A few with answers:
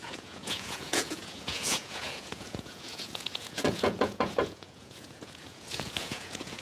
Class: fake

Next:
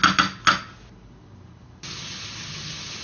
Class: real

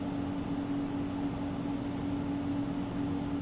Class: real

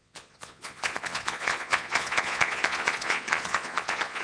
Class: fake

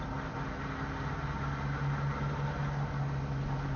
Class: real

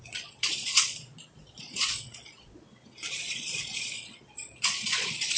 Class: fake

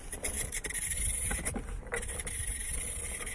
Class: real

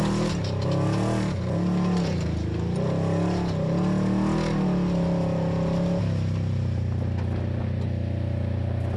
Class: real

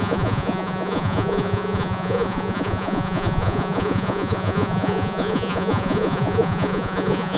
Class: fake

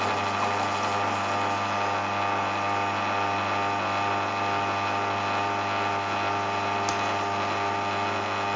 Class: real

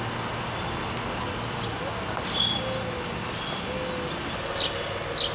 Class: real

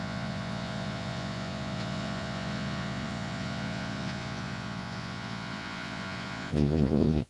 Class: fake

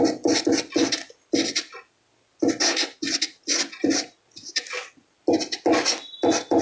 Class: real